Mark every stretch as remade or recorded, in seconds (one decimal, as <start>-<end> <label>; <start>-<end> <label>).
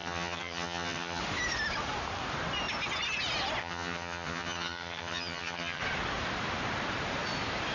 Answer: 0.0-1.2 remade; 1.2-3.6 recorded; 3.6-5.8 remade; 5.8-7.7 recorded